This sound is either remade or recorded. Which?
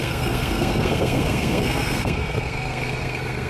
remade